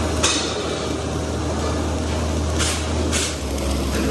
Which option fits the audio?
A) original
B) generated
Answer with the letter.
A